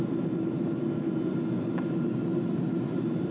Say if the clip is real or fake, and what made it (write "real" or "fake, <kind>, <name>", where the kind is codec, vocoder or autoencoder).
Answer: real